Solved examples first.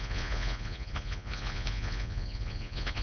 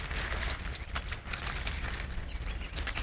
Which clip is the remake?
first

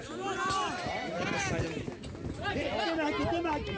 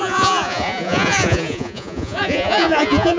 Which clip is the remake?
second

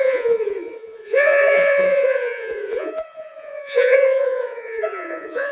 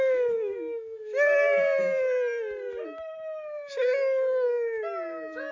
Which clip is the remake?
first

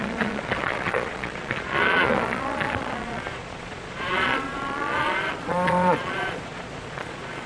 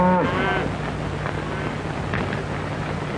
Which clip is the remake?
first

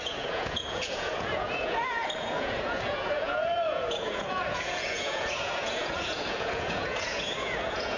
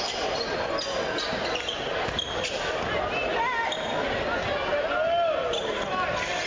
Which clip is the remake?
first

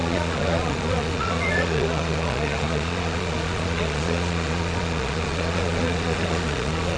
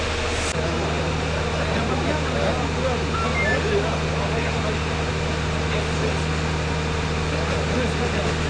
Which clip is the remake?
first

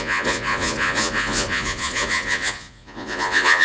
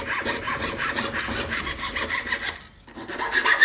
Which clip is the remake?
first